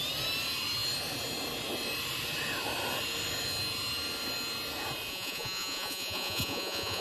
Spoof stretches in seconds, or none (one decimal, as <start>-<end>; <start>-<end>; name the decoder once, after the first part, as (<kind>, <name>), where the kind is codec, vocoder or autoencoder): 5.1-7.0 (vocoder, Vocos)